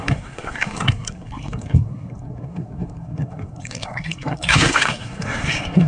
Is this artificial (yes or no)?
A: yes